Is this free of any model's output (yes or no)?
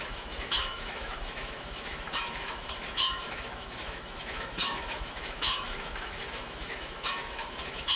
no